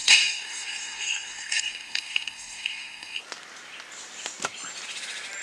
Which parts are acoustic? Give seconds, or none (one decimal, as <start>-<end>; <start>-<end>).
3.2-5.4

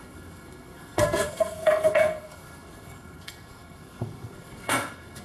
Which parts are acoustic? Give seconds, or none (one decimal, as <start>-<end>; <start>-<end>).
none

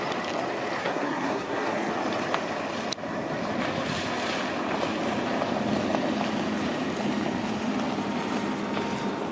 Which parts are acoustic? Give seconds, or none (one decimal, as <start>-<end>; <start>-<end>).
0.0-0.8; 1.9-9.3

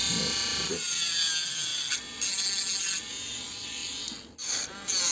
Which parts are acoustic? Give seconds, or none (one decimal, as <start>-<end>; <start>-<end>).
0.0-5.1

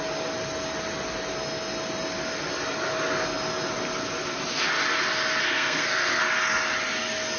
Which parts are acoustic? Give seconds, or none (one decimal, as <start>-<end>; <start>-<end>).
0.0-5.4; 6.2-7.4

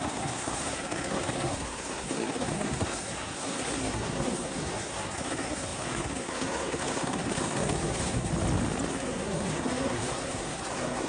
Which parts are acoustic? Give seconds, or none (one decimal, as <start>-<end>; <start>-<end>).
8.3-8.9

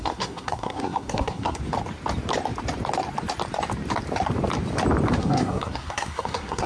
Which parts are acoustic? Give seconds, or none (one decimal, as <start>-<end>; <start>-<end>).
1.6-5.2